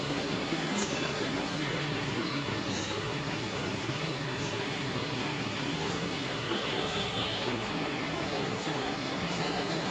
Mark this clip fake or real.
fake